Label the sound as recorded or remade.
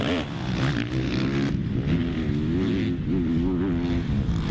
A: recorded